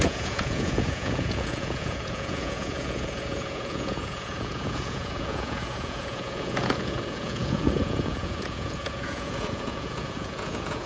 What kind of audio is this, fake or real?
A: fake